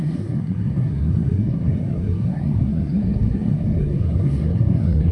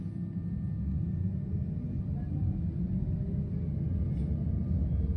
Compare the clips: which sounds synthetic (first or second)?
first